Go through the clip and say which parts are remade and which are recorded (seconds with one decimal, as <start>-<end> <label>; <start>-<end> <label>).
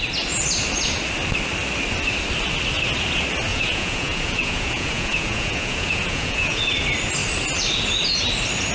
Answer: 0.0-3.5 recorded; 3.5-6.6 remade; 6.6-8.7 recorded